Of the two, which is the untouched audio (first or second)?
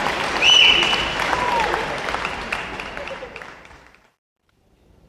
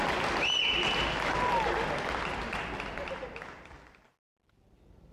second